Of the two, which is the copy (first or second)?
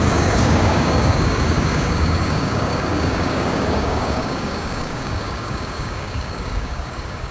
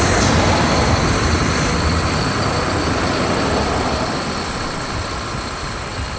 first